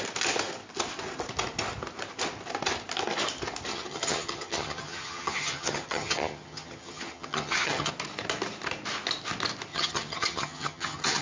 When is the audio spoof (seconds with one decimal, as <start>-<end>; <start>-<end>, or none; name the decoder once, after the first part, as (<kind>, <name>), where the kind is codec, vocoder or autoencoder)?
3.7-7.9 (vocoder, HiFi-GAN); 9.7-11.2